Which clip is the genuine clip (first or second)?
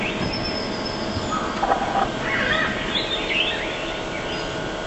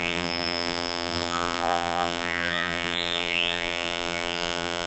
first